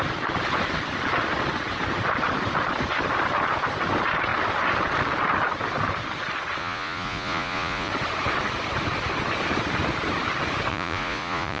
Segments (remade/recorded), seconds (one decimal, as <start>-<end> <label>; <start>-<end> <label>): 0.0-6.6 recorded; 6.6-7.9 remade; 7.9-10.7 recorded; 10.7-11.6 remade